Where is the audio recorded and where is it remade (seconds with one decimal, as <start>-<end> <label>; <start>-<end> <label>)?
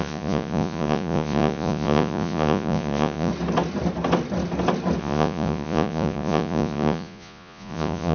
0.0-3.3 remade; 3.3-5.0 recorded; 5.0-8.1 remade